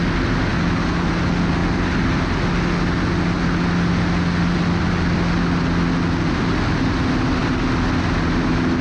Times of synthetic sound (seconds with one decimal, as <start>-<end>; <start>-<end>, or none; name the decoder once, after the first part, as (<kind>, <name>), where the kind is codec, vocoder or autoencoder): none